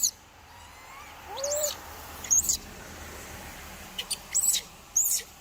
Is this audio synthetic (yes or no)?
yes